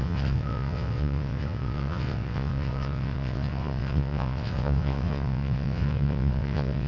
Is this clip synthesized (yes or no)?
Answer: yes